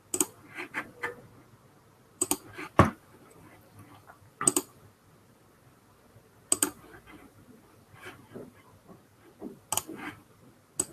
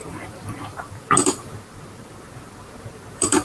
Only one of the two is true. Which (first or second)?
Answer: first